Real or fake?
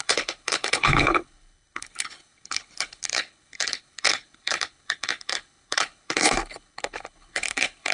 fake